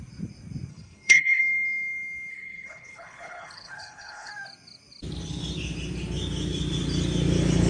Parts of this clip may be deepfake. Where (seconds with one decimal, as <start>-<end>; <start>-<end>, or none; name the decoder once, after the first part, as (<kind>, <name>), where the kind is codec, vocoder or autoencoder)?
0.7-1.4 (codec, HILCodec); 2.3-4.3